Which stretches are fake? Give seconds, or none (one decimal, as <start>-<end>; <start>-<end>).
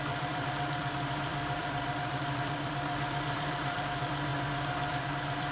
0.0-5.5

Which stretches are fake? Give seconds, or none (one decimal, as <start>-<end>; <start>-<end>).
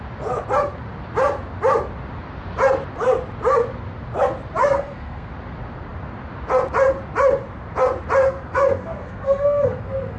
4.6-5.3; 8.2-10.2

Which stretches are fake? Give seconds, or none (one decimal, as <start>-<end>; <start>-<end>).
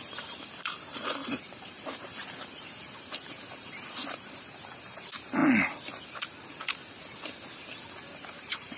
0.0-5.4; 8.1-8.8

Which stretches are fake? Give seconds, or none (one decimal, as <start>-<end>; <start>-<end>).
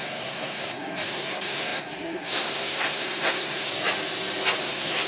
0.0-3.7; 4.6-5.1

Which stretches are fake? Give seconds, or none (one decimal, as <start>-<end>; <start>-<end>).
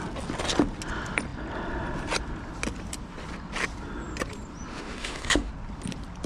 4.7-5.5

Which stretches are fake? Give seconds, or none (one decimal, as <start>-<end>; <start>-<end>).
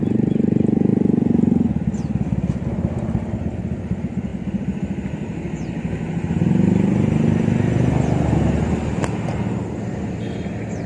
none